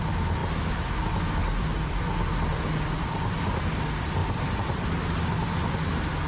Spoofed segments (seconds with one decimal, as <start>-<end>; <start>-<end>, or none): none